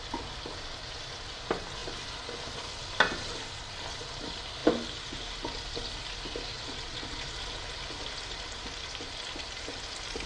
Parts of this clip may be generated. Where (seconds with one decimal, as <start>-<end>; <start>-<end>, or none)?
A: 6.5-7.3